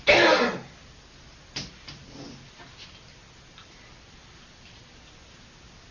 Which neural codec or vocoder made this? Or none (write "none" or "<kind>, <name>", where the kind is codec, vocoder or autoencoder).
none